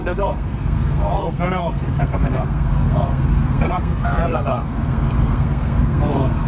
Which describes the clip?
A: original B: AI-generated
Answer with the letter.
B